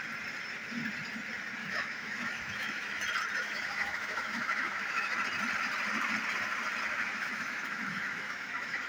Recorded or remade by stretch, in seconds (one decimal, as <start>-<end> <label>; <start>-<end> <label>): 0.0-1.6 recorded; 1.6-3.0 remade; 3.0-3.4 recorded; 3.4-5.1 remade; 5.1-7.0 recorded; 7.0-8.9 remade